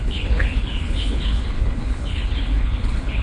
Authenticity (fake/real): fake